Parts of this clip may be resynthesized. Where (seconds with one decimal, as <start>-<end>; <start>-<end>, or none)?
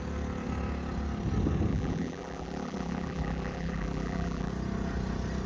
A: 1.7-4.5